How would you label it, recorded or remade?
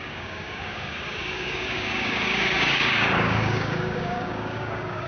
remade